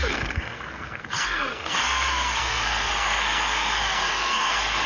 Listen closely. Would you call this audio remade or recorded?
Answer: remade